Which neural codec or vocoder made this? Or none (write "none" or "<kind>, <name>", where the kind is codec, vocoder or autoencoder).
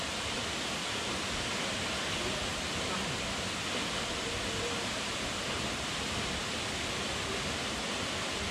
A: none